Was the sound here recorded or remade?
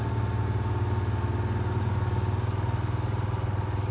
recorded